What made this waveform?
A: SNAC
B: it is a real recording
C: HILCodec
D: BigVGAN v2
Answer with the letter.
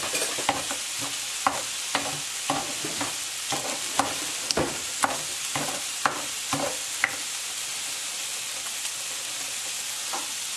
B